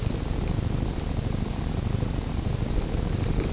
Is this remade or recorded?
recorded